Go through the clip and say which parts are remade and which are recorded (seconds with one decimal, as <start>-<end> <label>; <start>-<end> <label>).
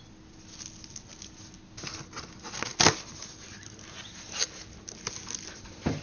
0.0-6.0 recorded